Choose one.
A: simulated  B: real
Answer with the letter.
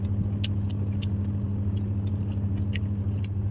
B